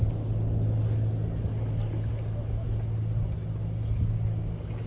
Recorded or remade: recorded